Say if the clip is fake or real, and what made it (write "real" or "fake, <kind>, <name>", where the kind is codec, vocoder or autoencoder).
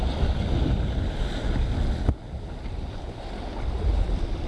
real